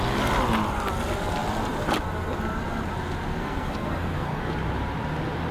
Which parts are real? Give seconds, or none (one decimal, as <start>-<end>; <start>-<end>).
0.0-3.3; 4.4-5.5